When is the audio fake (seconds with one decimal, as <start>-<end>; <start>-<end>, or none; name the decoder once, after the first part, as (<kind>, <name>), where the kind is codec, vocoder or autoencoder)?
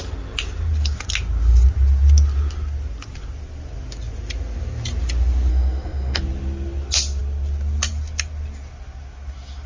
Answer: 5.5-6.2 (codec, SNAC)